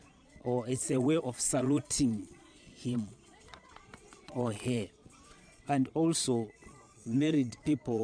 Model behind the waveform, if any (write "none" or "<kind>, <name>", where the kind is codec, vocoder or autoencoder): vocoder, Vocos